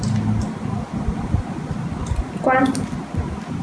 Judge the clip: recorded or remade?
recorded